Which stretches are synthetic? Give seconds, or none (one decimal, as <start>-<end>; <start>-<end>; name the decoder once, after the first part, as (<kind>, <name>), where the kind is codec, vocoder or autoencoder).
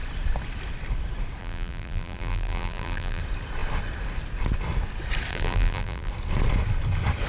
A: 1.4-3.2 (vocoder, BigVGAN v2); 5.3-6.1